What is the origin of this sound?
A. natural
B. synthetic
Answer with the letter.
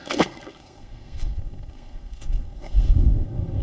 B